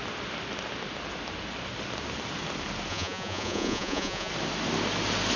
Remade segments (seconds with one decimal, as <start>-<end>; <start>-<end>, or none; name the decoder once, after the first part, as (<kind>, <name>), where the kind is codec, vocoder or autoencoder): 2.9-4.3 (vocoder, Vocos)